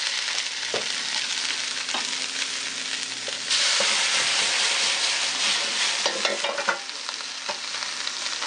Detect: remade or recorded recorded